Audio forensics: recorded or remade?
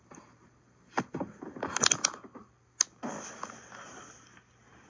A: recorded